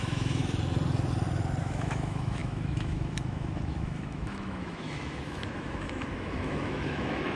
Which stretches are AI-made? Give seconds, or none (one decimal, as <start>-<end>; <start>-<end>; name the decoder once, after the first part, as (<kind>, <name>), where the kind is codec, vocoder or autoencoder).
0.0-0.4 (autoencoder, DAC-VAE); 1.6-7.4